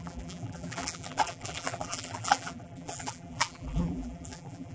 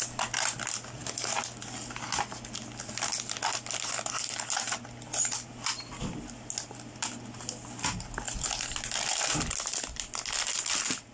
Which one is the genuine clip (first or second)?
second